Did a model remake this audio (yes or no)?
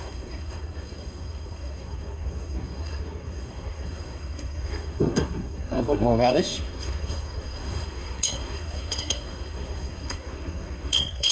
yes